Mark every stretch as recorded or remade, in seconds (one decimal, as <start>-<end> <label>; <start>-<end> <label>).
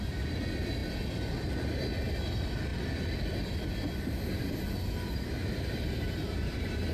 0.0-5.4 recorded; 5.4-6.9 remade